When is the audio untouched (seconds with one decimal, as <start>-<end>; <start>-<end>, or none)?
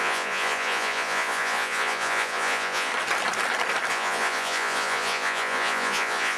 2.9-3.9